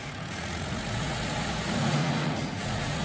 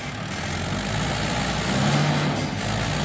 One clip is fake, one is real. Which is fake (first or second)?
first